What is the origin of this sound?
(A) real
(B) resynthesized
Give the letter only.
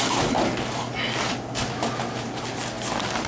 A